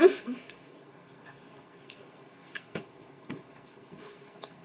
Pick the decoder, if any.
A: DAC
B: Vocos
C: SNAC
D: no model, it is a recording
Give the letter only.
C